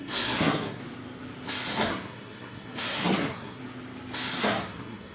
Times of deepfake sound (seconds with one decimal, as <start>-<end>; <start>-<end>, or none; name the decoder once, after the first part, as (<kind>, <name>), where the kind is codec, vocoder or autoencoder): 0.0-0.8 (codec, SNAC); 1.7-3.6; 4.4-5.1